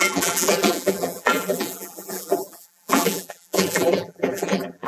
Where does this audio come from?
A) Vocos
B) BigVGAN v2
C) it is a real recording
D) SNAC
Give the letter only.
B